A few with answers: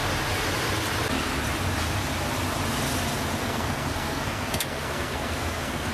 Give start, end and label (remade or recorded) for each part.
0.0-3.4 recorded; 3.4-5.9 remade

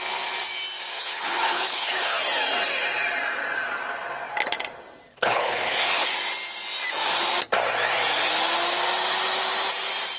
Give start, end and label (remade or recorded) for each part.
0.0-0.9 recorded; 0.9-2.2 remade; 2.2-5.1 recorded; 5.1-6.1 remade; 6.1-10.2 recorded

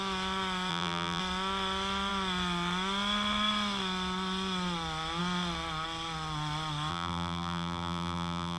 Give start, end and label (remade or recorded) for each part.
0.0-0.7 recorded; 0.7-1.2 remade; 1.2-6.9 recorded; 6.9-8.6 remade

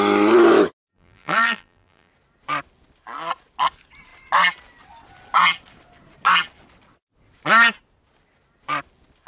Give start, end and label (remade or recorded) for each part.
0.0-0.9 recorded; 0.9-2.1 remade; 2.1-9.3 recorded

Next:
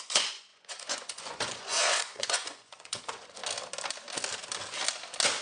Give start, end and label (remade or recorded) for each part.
0.0-3.4 remade; 3.4-5.4 recorded

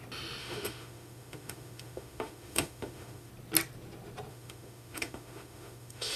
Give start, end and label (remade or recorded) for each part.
0.0-0.4 recorded; 0.4-3.3 remade; 3.3-4.3 recorded; 4.3-6.2 remade